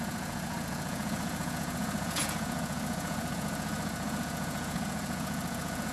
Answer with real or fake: fake